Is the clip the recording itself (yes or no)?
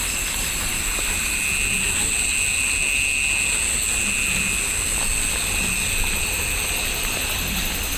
yes